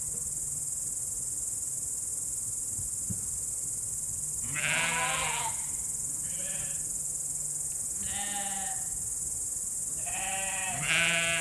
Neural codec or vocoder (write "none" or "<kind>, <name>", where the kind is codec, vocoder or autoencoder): none